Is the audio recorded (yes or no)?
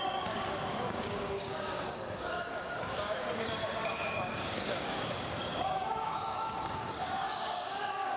no